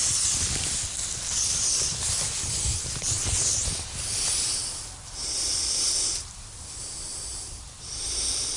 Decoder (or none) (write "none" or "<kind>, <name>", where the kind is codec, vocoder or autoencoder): none